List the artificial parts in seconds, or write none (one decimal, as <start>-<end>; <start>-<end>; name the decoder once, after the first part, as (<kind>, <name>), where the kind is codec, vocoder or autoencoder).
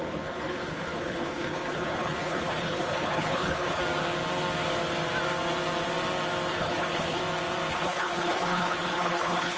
0.0-3.8 (codec, HILCodec); 6.5-7.2; 7.7-9.6